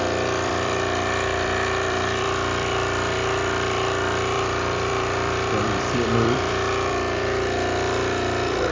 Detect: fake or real fake